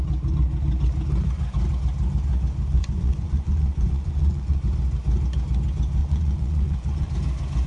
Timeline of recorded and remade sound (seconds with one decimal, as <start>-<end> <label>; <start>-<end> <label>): 0.0-2.7 recorded; 2.7-4.6 remade; 4.6-6.0 recorded; 6.0-7.1 remade; 7.1-7.7 recorded